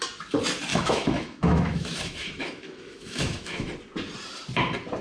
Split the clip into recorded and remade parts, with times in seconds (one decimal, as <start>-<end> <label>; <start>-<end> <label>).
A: 0.0-0.7 recorded; 0.7-3.7 remade; 3.7-5.0 recorded